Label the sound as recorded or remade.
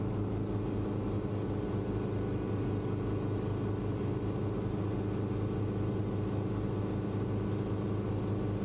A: recorded